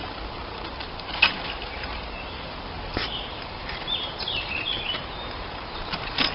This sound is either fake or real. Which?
fake